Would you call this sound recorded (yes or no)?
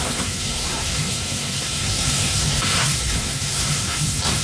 no